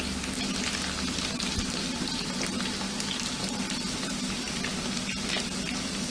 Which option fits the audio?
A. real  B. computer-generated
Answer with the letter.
A